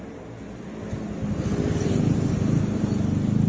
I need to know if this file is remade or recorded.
recorded